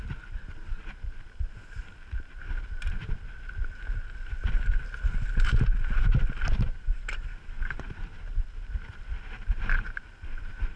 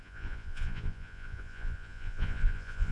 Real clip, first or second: first